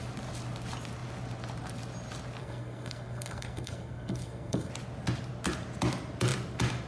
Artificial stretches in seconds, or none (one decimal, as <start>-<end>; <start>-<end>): 2.4-4.7